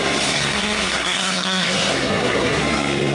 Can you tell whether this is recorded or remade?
remade